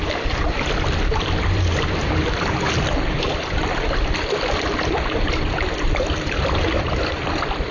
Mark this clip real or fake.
real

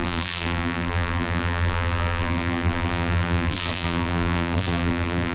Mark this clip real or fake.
fake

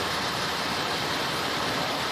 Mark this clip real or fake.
fake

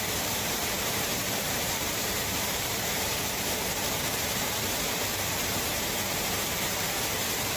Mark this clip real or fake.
fake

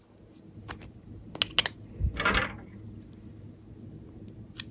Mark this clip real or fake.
real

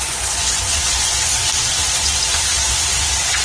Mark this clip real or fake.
fake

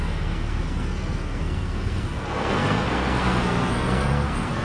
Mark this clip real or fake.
fake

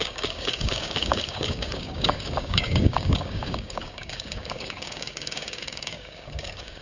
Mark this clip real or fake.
fake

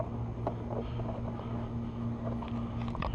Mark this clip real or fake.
real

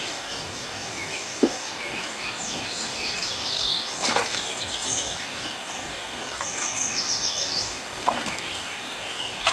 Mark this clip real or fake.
fake